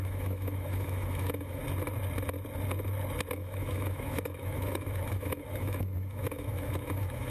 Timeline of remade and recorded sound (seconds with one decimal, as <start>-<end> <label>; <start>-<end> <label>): 0.0-1.6 remade; 1.6-3.3 recorded; 3.3-7.3 remade

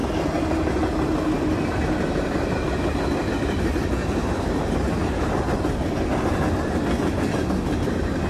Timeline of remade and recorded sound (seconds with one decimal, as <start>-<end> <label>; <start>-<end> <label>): 0.0-4.0 recorded; 4.0-5.3 remade; 5.3-8.3 recorded

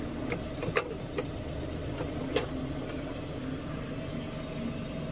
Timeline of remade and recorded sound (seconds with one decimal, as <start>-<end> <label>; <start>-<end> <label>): 0.0-5.1 recorded

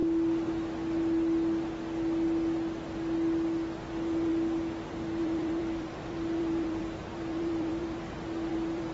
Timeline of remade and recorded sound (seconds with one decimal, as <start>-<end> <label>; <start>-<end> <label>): 0.0-3.9 recorded; 3.9-4.3 remade; 4.3-5.2 recorded; 5.2-8.9 remade

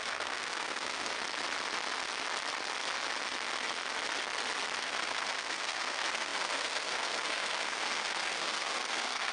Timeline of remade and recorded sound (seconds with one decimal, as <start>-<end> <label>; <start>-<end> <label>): 0.0-1.1 remade; 1.1-4.8 recorded; 4.8-9.3 remade

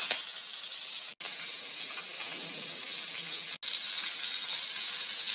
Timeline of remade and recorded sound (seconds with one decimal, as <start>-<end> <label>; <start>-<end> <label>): 0.0-5.3 recorded

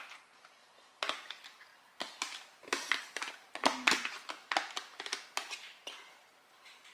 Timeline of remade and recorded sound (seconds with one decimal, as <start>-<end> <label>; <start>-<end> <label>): 0.0-6.9 recorded